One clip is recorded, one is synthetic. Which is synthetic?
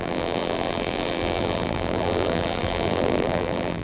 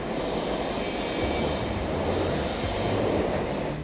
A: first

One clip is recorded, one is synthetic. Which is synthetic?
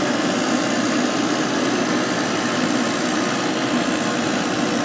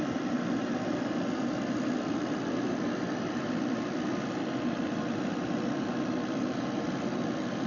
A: second